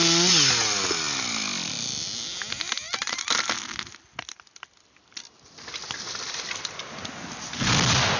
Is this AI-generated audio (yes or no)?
no